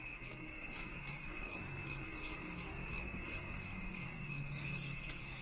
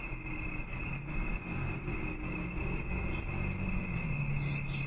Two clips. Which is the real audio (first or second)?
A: second